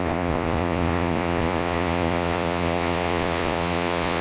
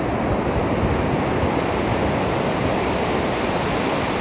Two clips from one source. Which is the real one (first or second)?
second